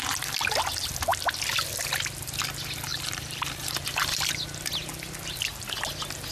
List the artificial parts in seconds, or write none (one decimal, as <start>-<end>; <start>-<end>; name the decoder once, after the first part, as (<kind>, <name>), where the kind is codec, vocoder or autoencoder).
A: 2.9-4.2 (vocoder, BigVGAN v2)